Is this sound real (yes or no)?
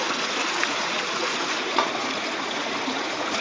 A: no